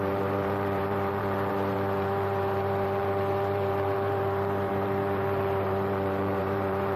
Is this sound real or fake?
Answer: fake